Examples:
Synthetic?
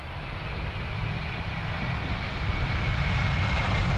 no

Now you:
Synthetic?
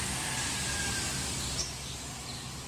no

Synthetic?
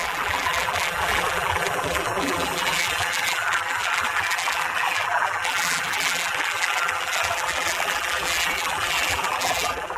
yes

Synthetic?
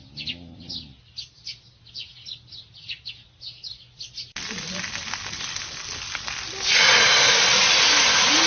no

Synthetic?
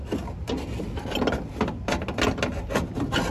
no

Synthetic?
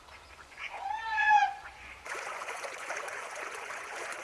yes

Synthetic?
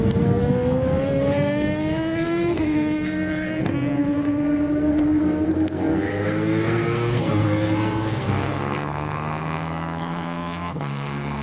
yes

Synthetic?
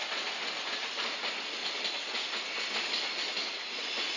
no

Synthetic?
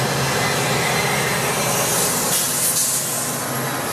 no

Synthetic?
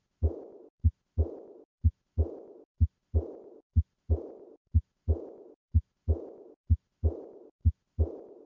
no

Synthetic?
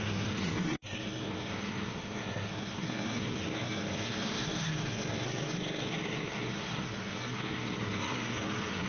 yes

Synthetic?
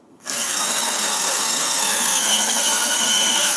yes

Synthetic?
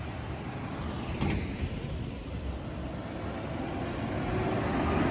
no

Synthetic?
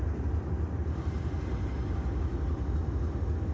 no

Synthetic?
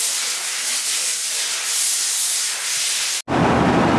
no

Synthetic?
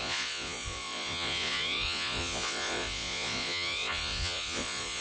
yes